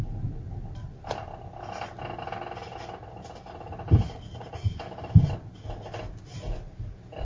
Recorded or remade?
recorded